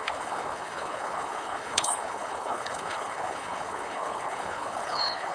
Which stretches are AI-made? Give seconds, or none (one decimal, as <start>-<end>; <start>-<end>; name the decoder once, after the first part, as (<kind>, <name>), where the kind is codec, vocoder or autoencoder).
0.0-5.3 (codec, HILCodec)

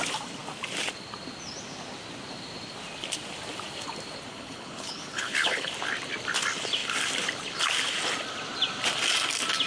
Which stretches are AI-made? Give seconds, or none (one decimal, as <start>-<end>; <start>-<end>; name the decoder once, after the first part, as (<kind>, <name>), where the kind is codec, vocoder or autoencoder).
4.3-5.7 (codec, HILCodec)